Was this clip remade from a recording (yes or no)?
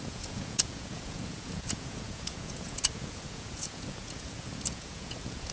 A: yes